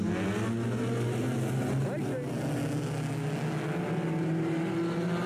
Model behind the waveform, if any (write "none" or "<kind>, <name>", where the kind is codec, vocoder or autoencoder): none